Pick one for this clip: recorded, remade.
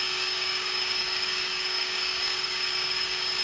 remade